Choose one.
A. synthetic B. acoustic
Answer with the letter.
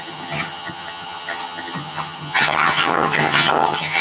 A